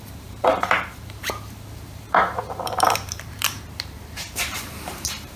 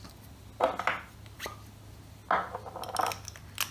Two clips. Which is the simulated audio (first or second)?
first